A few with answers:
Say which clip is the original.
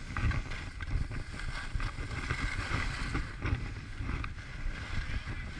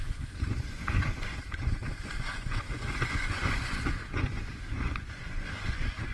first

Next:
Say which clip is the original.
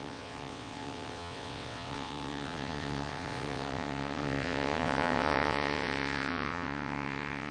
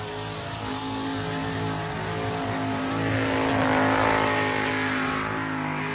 second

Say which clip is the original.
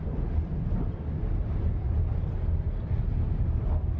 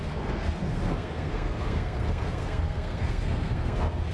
first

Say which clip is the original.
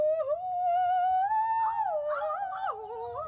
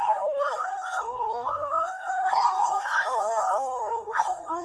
first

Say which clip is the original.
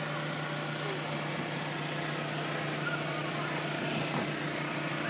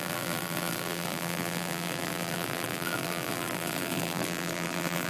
first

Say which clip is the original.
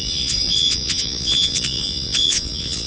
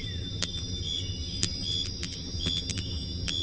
second